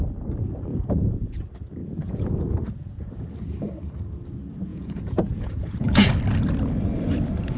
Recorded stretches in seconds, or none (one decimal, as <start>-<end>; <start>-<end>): 0.0-0.7; 1.4-1.8; 3.1-4.7; 6.1-7.6